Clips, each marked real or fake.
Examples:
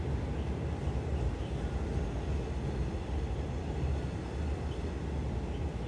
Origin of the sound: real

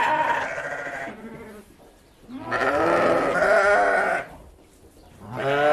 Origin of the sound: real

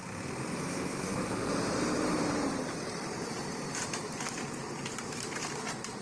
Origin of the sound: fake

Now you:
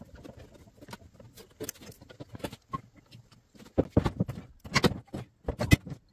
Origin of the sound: real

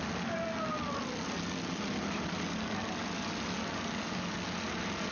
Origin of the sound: real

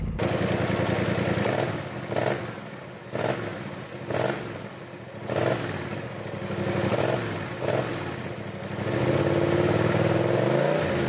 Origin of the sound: real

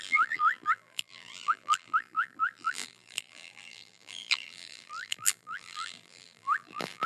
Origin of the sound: fake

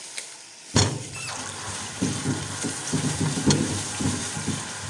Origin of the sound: fake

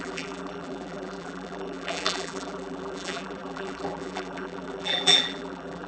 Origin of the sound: fake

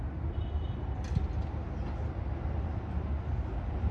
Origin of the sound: fake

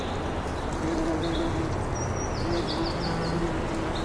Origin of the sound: real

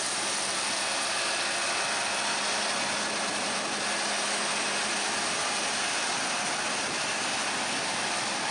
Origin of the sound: real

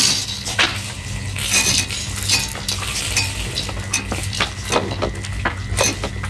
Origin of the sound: real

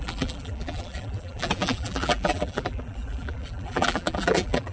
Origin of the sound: fake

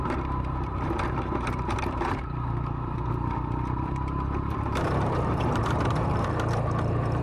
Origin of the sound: fake